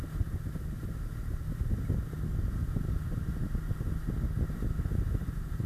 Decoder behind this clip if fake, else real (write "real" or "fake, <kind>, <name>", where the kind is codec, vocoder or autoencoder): real